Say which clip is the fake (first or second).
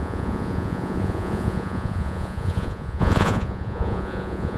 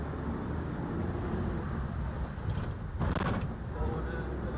first